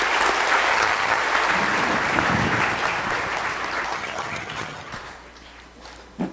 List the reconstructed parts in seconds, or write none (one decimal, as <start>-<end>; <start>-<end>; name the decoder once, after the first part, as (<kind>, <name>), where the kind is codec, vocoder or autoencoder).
0.7-1.2 (vocoder, HiFi-GAN); 3.9-4.9